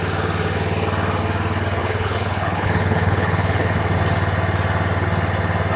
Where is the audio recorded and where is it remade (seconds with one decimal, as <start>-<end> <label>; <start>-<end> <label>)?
0.0-1.8 recorded; 1.8-3.8 remade; 3.8-5.8 recorded